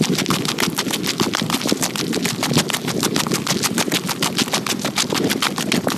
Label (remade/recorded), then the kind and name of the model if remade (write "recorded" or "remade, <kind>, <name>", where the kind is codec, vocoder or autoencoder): recorded